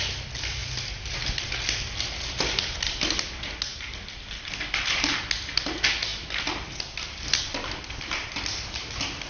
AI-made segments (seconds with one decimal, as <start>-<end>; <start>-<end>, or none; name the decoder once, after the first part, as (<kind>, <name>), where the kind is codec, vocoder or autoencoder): 3.7-5.1 (vocoder, BigVGAN v2)